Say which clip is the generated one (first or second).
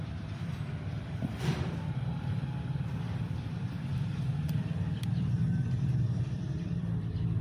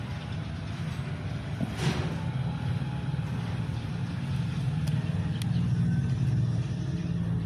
first